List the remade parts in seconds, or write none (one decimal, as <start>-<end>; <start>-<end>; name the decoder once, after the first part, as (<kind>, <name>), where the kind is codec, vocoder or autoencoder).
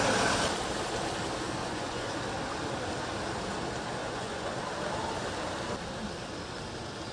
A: 1.6-2.2 (vocoder, Vocos); 4.0-4.6